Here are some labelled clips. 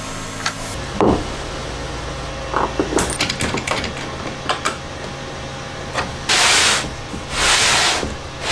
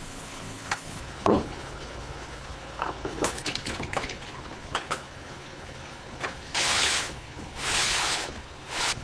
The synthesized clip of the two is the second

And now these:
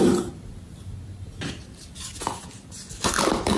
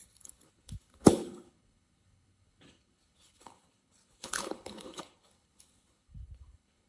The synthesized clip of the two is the second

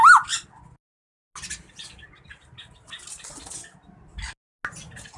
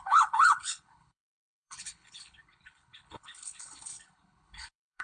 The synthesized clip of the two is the second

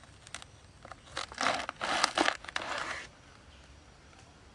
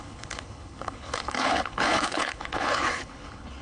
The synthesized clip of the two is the second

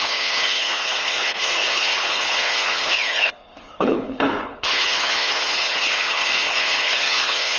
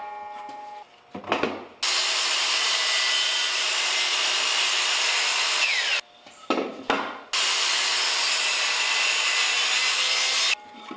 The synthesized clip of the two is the first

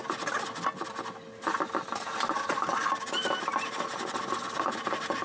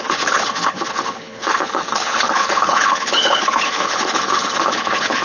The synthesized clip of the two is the second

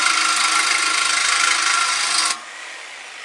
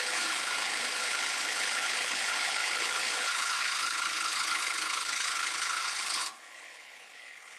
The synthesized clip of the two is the second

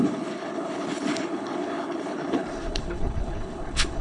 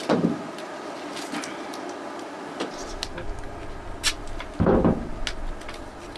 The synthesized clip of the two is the first